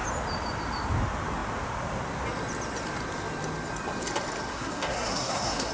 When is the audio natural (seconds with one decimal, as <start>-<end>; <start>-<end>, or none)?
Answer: 0.0-4.5